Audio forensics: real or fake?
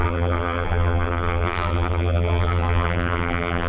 fake